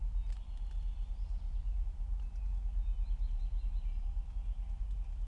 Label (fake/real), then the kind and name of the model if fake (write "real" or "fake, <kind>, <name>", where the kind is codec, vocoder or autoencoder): real